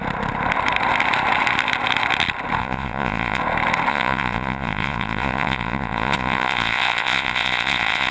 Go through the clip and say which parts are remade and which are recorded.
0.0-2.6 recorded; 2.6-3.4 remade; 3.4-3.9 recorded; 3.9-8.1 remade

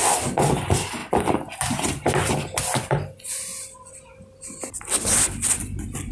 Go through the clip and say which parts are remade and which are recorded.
0.0-6.1 recorded

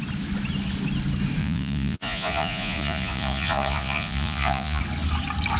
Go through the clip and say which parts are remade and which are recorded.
0.0-1.4 recorded; 1.4-4.8 remade; 4.8-5.6 recorded

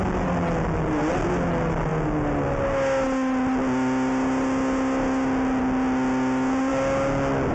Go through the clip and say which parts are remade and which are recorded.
0.0-7.5 recorded

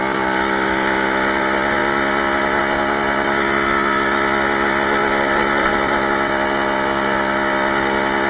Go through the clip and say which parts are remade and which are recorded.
0.0-8.3 recorded

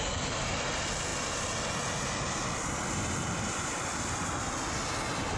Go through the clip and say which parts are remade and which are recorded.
0.0-5.4 recorded

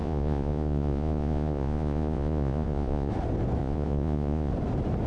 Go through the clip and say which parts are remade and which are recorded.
0.0-3.1 remade; 3.1-3.6 recorded; 3.6-4.5 remade; 4.5-5.1 recorded

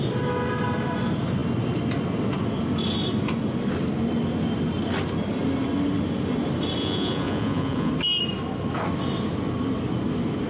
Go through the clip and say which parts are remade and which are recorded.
0.0-6.8 recorded; 6.8-7.9 remade; 7.9-10.5 recorded